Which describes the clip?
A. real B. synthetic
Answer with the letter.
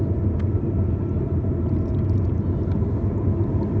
A